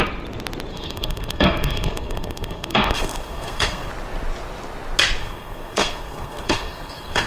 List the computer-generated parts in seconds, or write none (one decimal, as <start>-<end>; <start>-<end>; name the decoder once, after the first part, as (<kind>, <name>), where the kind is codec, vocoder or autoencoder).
0.7-3.9 (codec, SNAC); 5.2-7.3